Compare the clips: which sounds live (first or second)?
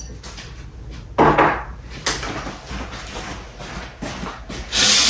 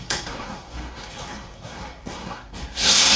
first